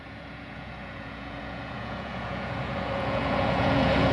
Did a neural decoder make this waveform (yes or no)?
yes